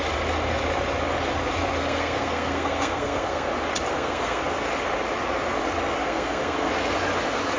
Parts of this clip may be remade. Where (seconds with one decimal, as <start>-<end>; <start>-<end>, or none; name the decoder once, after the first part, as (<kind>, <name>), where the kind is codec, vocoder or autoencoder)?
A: 1.8-3.5 (codec, SNAC); 3.9-4.4; 6.0-6.7